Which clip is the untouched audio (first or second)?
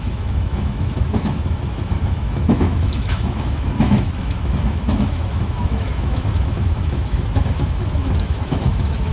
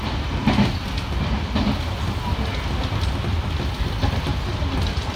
second